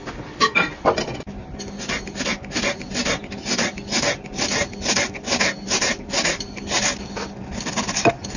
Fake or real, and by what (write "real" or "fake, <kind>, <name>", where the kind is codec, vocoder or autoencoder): real